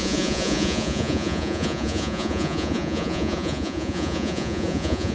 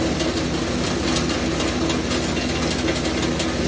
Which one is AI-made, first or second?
first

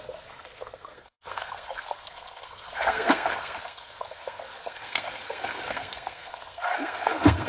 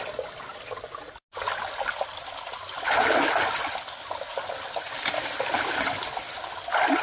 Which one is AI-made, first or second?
first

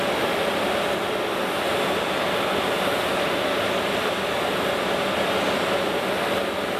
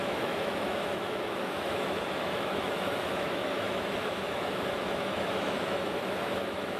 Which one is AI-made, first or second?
second